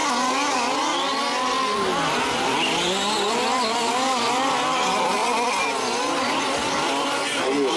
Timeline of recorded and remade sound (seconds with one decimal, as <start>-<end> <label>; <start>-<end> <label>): 0.0-7.8 recorded